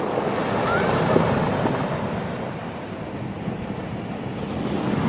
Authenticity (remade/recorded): recorded